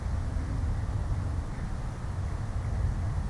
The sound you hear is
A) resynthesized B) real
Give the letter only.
B